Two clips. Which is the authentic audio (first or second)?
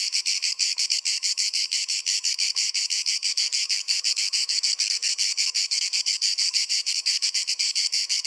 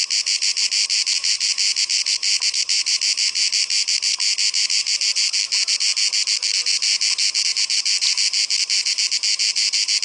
second